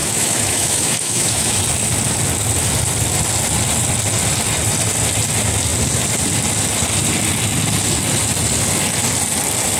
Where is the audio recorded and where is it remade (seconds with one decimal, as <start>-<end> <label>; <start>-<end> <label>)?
0.0-1.6 remade; 1.6-9.8 recorded